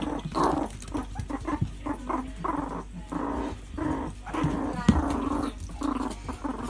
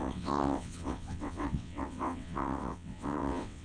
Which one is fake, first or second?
second